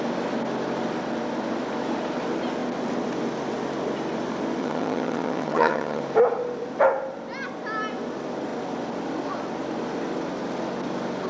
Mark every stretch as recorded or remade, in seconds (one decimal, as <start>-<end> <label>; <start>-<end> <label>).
0.0-4.6 recorded; 4.6-6.0 remade; 6.0-11.3 recorded